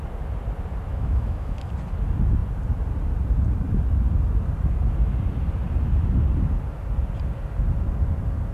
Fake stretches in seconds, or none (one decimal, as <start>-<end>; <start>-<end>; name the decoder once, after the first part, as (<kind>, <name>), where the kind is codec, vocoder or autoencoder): 0.9-1.7 (autoencoder, DAC-VAE)